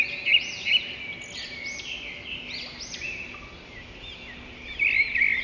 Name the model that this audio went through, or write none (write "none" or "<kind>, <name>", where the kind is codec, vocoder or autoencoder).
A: none